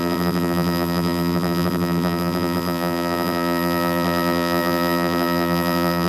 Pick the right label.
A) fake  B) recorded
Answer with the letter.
A